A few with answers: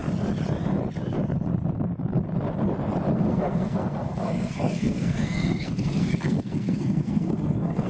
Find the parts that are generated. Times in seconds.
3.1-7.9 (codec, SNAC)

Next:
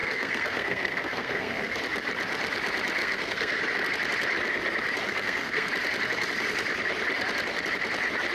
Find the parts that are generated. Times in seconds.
0.0-1.8 (codec, SNAC); 3.0-3.6; 5.1-5.7

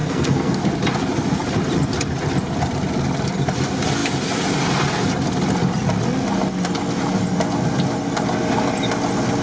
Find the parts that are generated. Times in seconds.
0.0-0.6 (codec, SNAC)

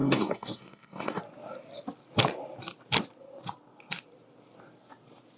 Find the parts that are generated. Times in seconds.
0.0-1.2 (codec, SNAC)

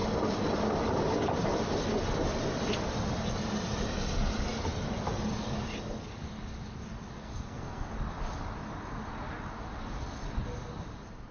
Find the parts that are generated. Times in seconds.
7.2-7.9 (codec, SNAC)

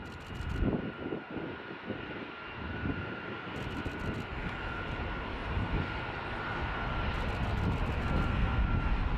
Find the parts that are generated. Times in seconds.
8.0-8.6 (codec, SNAC)

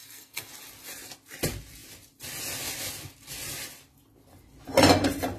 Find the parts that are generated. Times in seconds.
0.0-0.5 (codec, SNAC)

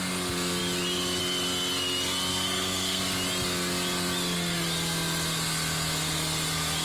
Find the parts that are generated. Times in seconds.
2.3-3.0 (codec, SNAC)